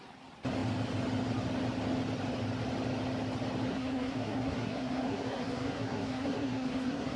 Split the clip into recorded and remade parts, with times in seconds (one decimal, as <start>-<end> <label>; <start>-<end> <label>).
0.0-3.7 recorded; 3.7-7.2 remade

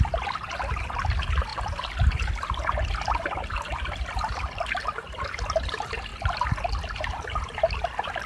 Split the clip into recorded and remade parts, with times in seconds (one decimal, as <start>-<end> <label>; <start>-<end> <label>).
0.0-8.3 recorded

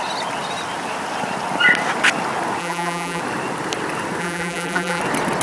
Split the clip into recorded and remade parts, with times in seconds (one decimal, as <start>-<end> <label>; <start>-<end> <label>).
0.0-2.6 recorded; 2.6-3.2 remade; 3.2-4.2 recorded; 4.2-5.0 remade; 5.0-5.4 recorded

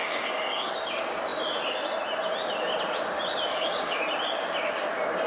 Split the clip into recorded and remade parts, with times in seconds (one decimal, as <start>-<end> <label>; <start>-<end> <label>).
0.0-0.7 remade; 0.7-3.5 recorded; 3.5-4.0 remade; 4.0-5.3 recorded

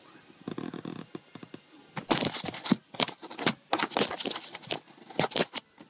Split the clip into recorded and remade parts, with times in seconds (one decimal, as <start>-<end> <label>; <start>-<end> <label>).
0.0-1.4 recorded; 1.4-3.1 remade; 3.1-5.9 recorded

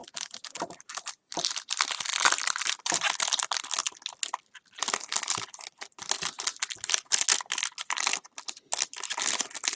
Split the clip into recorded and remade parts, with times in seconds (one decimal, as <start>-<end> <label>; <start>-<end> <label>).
0.0-0.9 remade; 0.9-2.1 recorded; 2.1-2.6 remade; 2.6-9.8 recorded